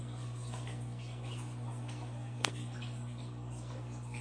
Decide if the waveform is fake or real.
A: fake